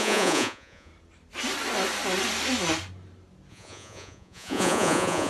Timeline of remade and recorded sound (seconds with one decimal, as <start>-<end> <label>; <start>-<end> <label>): 0.0-0.9 remade; 0.9-3.5 recorded; 3.5-5.3 remade